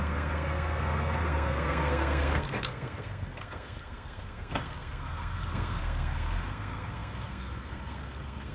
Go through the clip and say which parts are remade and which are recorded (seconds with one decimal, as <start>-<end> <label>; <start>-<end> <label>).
0.0-8.5 remade